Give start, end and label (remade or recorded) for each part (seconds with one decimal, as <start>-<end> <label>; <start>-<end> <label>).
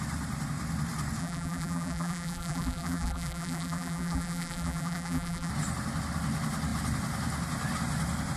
0.0-1.2 recorded; 1.2-5.5 remade; 5.5-8.4 recorded